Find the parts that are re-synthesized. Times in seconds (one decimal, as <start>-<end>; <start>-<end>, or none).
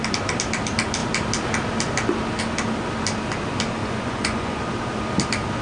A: 3.8-4.6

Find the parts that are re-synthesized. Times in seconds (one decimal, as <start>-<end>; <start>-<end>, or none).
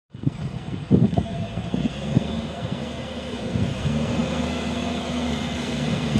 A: 0.0-6.2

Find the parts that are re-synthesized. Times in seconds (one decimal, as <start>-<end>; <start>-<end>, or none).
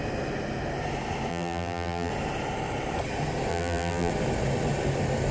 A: 1.3-2.1; 3.5-4.1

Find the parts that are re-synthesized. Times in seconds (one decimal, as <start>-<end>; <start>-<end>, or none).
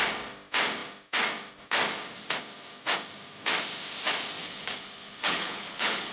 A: 4.4-6.1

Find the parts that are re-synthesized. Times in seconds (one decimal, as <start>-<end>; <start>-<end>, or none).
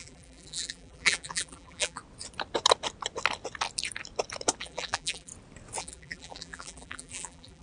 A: 0.0-2.0; 4.6-5.3; 5.8-7.6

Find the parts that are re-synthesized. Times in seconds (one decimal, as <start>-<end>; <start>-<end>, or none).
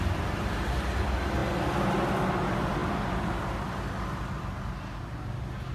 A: none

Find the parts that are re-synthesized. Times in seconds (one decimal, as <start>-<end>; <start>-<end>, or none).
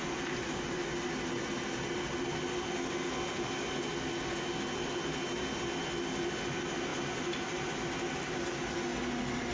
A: none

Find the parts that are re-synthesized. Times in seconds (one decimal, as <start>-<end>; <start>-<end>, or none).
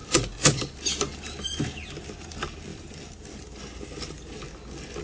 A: 2.7-4.4